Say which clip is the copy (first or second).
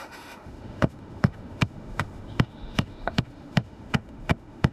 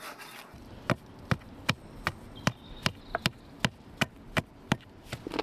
first